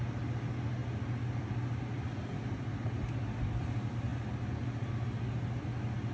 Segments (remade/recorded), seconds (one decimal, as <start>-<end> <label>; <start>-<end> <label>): 0.0-6.1 recorded

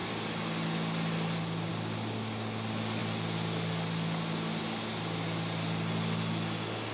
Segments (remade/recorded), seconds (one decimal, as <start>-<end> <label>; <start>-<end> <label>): 0.0-6.9 recorded

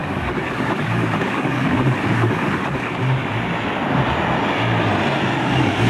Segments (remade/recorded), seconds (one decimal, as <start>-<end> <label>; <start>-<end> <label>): 0.0-3.2 remade; 3.2-5.4 recorded; 5.4-5.9 remade

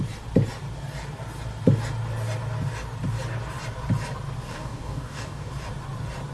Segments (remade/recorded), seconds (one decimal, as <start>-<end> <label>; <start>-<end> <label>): 0.0-4.5 recorded; 4.5-5.5 remade; 5.5-6.3 recorded

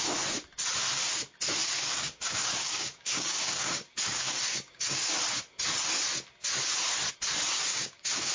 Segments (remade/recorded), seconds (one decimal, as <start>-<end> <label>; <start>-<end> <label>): 0.0-1.6 recorded; 1.6-5.1 remade; 5.1-7.7 recorded; 7.7-8.3 remade